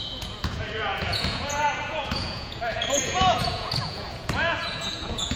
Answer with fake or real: fake